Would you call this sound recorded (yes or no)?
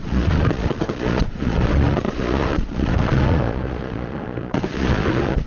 no